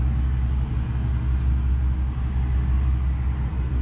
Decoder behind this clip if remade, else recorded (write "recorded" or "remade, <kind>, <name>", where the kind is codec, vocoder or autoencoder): recorded